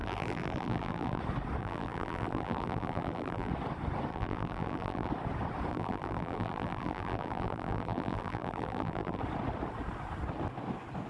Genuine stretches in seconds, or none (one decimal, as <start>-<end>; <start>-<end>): 1.2-1.6; 3.5-4.1; 5.1-5.7; 9.2-11.1